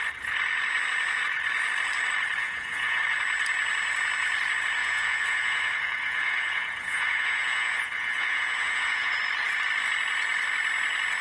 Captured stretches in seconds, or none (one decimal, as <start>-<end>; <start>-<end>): 0.0-2.4; 3.0-4.8; 9.1-11.2